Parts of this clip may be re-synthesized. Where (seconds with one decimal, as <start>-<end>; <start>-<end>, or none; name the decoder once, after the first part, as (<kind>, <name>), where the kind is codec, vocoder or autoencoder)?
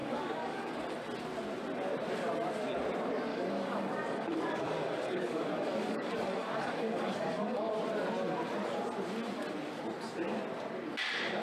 0.0-0.8 (codec, DAC); 3.3-7.7